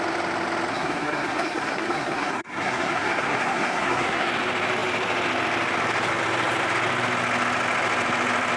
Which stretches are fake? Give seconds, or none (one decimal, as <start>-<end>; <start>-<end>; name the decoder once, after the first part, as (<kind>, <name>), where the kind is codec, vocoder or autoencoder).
0.7-4.3 (codec, SNAC)